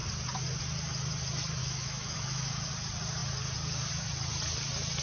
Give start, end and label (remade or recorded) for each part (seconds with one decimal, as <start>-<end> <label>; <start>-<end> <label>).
0.0-1.6 recorded; 1.6-2.7 remade; 2.7-5.0 recorded